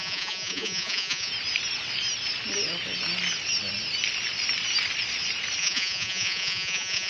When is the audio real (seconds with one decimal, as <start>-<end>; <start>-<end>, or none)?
1.3-5.6